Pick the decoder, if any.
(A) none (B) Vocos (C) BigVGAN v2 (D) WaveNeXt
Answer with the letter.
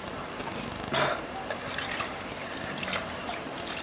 C